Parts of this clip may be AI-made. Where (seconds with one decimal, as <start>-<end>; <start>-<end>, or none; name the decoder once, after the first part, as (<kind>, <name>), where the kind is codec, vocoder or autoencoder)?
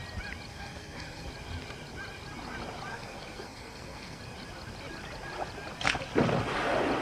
0.5-1.3 (codec, SNAC); 2.9-4.2